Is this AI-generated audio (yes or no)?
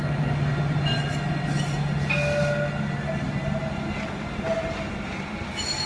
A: no